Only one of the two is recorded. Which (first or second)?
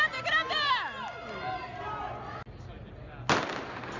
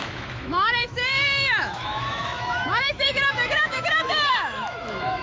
first